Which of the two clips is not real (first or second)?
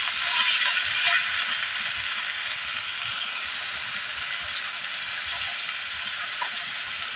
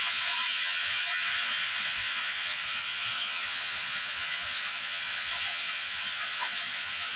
second